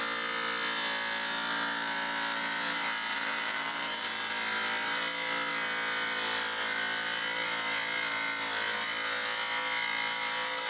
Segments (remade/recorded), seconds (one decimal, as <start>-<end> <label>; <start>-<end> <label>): 0.0-3.1 recorded; 3.1-4.3 remade; 4.3-10.7 recorded